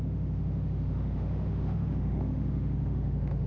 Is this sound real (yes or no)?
no